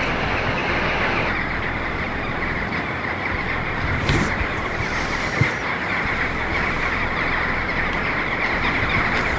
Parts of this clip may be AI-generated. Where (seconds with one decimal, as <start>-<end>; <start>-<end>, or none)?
none